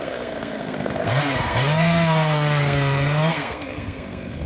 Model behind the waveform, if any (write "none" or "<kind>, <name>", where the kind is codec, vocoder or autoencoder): codec, SNAC